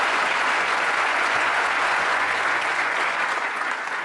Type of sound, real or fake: fake